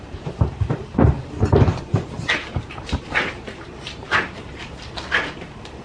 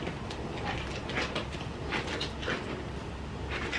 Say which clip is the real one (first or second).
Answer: second